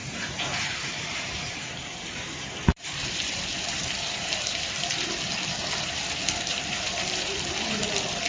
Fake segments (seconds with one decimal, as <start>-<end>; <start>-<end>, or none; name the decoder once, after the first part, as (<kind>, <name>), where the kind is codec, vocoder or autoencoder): 0.0-2.0 (vocoder, BigVGAN v2); 2.7-5.1; 6.5-7.8